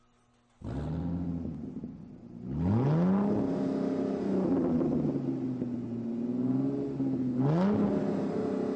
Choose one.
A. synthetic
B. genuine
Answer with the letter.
B